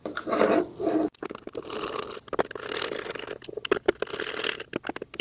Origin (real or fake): real